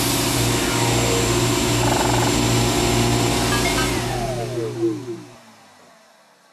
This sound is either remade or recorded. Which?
recorded